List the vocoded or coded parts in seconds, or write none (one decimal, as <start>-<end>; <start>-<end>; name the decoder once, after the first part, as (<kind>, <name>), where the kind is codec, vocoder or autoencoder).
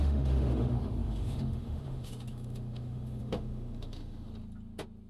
0.0-4.3 (autoencoder, DAC-VAE)